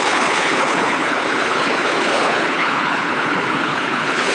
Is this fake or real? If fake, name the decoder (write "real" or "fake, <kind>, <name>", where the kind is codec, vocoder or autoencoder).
fake, codec, HILCodec